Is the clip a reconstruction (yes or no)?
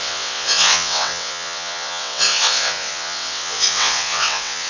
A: yes